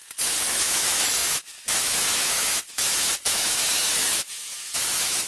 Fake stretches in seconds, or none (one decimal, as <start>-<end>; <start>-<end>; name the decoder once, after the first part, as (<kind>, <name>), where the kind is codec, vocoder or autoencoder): 0.0-5.3 (autoencoder, DAC-VAE)